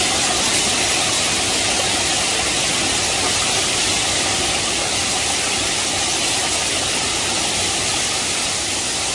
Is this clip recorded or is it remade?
recorded